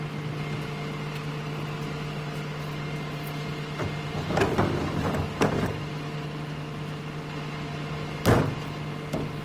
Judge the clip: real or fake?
real